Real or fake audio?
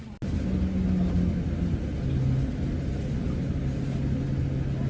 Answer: real